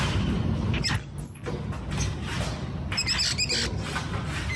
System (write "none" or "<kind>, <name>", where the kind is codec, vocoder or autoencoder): none